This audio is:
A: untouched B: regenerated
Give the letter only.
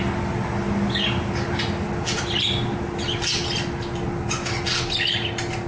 A